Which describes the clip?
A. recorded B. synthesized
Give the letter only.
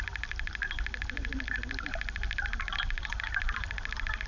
A